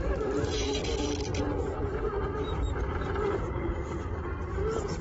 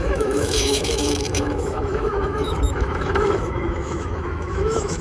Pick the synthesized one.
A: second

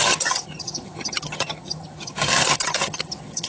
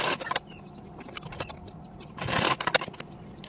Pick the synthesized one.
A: first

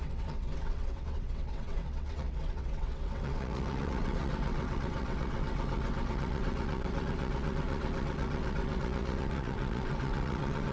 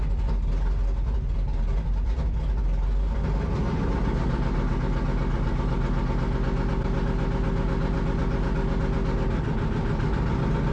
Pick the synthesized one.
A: first